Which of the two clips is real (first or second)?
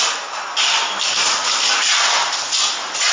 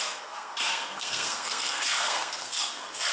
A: first